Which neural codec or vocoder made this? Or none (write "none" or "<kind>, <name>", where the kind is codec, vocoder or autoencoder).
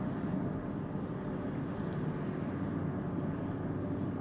none